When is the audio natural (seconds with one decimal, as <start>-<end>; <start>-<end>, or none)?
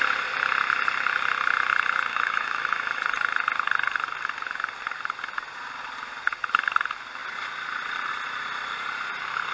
0.0-2.1; 3.0-9.5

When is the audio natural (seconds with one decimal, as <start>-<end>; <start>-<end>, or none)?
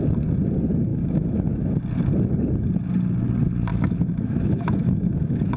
0.0-0.9; 1.8-3.7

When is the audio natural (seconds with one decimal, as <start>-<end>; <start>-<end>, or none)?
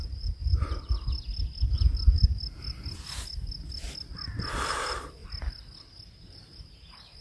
0.4-4.7; 5.2-6.1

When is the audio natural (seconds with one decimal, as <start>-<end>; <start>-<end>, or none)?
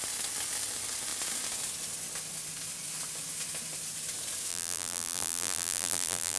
0.0-4.5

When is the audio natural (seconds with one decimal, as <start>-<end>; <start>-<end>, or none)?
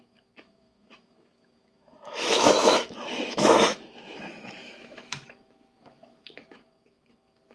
none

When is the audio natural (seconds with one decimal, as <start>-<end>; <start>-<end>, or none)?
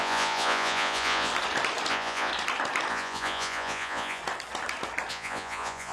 1.3-1.9; 2.3-2.9; 4.2-5.1